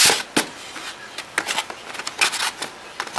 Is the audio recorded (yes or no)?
yes